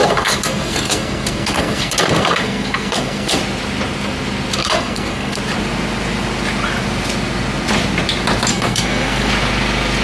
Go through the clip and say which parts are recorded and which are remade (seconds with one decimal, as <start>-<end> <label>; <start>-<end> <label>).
0.0-3.4 remade; 3.4-4.6 recorded; 4.6-5.4 remade; 5.4-8.5 recorded; 8.5-9.3 remade; 9.3-10.0 recorded